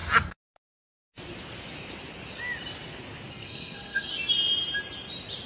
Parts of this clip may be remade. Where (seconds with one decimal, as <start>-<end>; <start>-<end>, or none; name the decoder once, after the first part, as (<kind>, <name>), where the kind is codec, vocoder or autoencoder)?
3.3-4.1 (codec, SNAC)

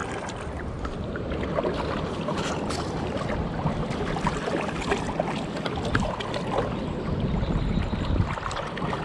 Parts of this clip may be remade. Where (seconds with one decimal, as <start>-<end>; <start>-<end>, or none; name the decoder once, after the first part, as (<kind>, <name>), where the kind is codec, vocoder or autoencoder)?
none

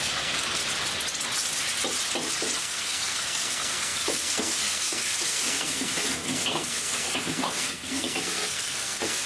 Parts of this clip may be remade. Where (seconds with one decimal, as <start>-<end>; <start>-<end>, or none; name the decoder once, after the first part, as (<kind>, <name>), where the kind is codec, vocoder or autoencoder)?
0.0-0.6 (codec, SNAC); 2.6-9.3